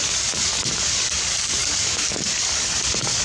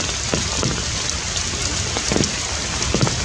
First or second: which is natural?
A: second